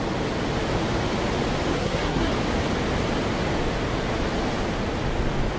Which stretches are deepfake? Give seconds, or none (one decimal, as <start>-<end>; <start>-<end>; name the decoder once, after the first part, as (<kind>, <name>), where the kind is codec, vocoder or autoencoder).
1.7-2.3 (codec, SNAC)